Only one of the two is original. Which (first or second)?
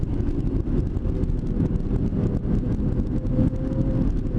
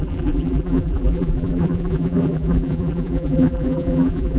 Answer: first